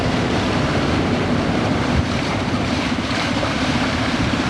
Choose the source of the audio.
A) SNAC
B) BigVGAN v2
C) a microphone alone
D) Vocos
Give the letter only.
B